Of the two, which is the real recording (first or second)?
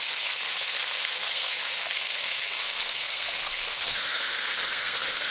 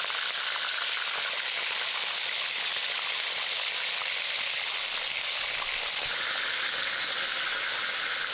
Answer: second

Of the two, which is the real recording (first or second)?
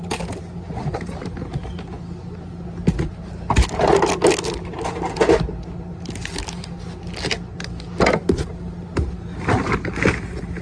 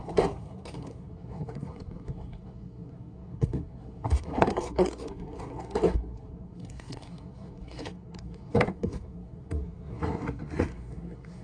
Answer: first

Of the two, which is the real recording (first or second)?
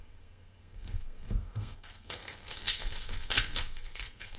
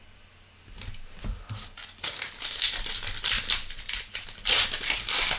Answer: second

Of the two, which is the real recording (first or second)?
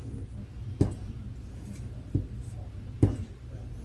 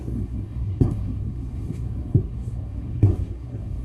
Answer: first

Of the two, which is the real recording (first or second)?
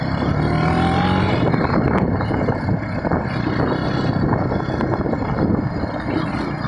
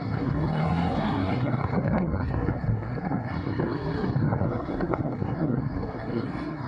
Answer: first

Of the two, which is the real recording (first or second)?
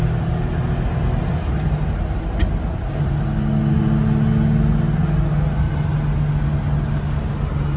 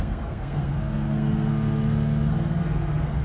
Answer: first